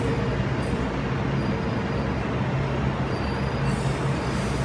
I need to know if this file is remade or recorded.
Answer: recorded